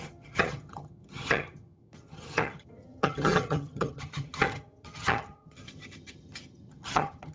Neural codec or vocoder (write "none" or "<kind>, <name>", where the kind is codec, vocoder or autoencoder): vocoder, HiFi-GAN